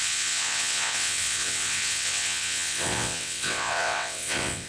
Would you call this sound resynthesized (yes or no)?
yes